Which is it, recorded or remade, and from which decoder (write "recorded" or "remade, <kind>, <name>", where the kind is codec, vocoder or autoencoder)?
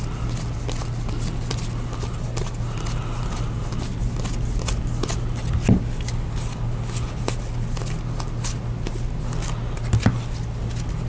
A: recorded